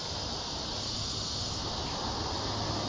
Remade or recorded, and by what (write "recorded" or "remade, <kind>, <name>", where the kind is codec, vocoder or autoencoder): recorded